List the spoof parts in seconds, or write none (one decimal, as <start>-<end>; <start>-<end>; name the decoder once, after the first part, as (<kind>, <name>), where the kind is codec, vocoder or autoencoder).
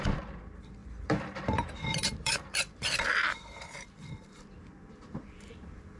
0.8-4.4 (vocoder, BigVGAN v2)